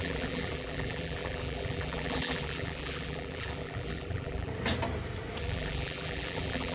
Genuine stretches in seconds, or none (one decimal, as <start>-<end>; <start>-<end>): 4.5-5.4